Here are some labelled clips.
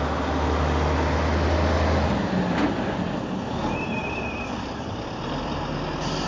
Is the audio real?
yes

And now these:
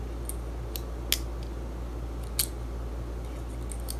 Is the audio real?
yes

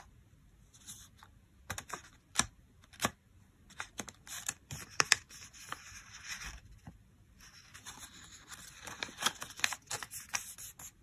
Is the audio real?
no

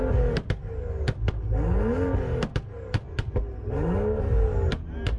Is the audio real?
yes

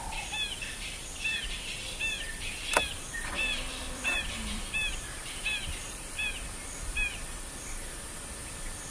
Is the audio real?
no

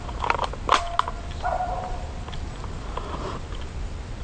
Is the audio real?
yes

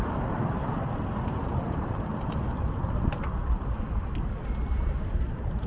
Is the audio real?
no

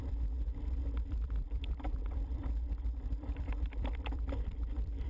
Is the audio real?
no